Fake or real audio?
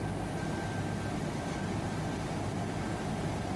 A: real